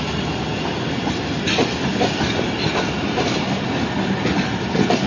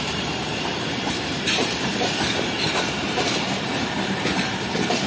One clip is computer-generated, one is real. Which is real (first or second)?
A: first